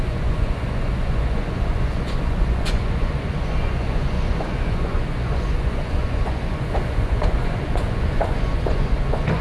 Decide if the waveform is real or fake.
fake